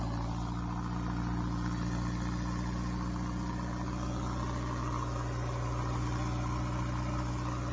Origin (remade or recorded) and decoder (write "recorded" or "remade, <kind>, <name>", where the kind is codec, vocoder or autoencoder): recorded